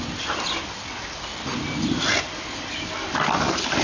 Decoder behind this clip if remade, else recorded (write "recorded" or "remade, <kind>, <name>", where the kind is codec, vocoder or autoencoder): recorded